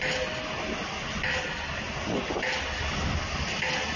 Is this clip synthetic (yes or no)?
no